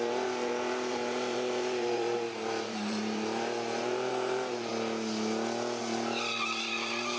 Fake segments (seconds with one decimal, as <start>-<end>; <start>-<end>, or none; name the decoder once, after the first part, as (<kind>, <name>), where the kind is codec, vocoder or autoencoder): 0.0-4.7 (vocoder, BigVGAN v2); 5.8-7.2